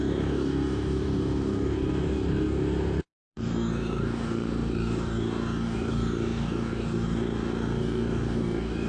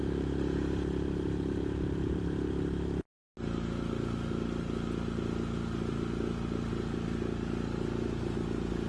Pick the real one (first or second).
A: second